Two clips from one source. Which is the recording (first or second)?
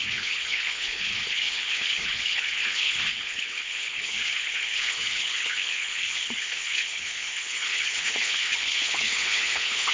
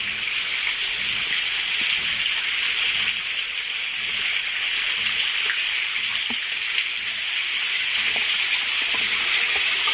second